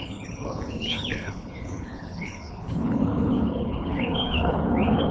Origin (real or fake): fake